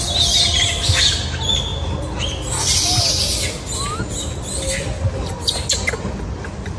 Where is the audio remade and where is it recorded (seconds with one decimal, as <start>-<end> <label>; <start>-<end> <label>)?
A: 0.0-6.8 recorded